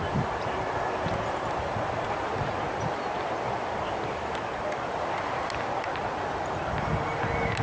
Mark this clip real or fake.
real